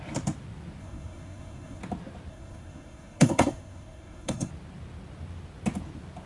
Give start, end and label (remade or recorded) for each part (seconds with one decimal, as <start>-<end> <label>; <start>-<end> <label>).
0.0-0.8 recorded; 0.8-1.8 remade; 1.8-2.3 recorded; 2.3-4.5 remade; 4.5-6.3 recorded